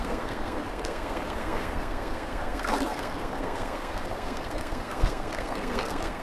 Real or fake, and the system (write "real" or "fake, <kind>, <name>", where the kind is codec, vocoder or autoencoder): fake, codec, SNAC